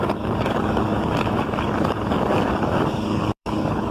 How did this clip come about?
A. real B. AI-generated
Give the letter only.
B